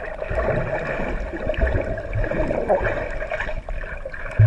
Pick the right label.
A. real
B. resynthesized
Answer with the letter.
A